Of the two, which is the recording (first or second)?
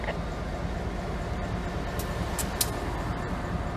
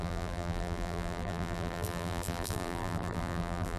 first